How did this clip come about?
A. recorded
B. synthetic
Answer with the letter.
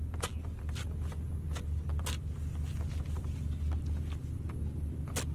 A